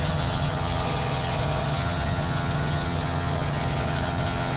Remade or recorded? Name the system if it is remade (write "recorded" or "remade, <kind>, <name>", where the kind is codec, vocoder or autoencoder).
remade, vocoder, HiFi-GAN